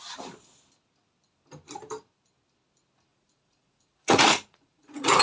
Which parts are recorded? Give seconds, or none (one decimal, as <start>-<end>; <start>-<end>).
0.0-3.1